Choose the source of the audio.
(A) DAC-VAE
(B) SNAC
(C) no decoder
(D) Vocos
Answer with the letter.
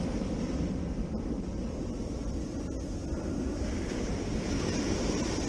C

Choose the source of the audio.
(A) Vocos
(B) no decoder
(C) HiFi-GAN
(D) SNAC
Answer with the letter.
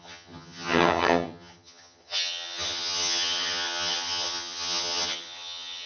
C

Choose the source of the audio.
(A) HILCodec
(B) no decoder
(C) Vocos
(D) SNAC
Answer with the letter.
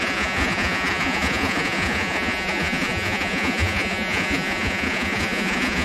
C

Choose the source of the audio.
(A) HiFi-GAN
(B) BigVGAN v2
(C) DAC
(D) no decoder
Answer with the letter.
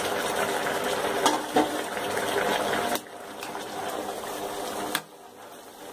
D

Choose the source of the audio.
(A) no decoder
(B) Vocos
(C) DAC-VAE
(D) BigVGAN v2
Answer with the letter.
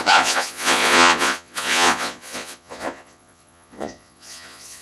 B